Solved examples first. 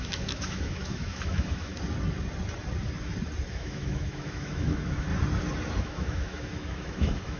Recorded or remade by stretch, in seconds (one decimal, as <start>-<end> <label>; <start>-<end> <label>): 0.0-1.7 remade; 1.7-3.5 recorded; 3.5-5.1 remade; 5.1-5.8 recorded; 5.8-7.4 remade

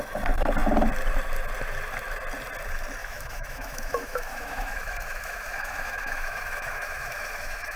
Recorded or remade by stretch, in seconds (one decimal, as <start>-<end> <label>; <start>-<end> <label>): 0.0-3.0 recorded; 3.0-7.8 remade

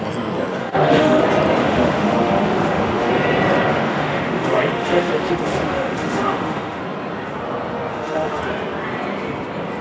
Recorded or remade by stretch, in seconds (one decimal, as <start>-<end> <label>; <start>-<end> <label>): 0.0-0.6 recorded; 0.6-1.2 remade; 1.2-1.6 recorded; 1.6-3.1 remade; 3.1-3.7 recorded; 3.7-6.8 remade; 6.8-7.9 recorded; 7.9-8.4 remade; 8.4-9.8 recorded

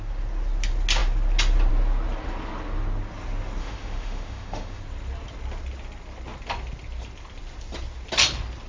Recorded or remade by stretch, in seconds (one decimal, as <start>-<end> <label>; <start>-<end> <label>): 0.0-3.6 recorded; 3.6-4.8 remade; 4.8-8.7 recorded

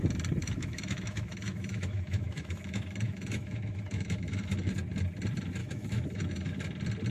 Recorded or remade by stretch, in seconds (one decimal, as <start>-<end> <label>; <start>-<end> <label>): 0.0-0.4 recorded; 0.4-4.7 remade; 4.7-5.6 recorded; 5.6-6.6 remade; 6.6-7.1 recorded